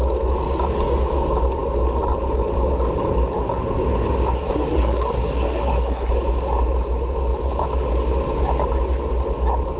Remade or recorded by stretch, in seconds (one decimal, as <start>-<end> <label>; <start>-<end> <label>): 0.0-4.3 recorded; 4.3-6.1 remade; 6.1-9.8 recorded